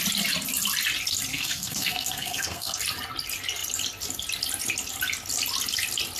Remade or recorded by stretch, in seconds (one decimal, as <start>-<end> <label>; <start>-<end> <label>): 0.0-1.3 recorded; 1.3-2.8 remade; 2.8-6.2 recorded